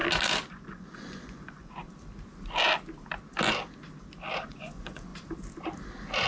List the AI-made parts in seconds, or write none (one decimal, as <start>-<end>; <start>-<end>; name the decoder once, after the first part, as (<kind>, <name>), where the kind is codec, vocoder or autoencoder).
0.5-1.8 (vocoder, Vocos); 4.5-5.1